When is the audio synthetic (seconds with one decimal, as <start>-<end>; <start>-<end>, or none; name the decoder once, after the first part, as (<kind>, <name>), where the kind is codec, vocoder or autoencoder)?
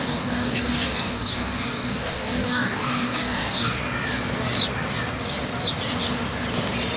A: 0.0-3.8 (codec, DAC)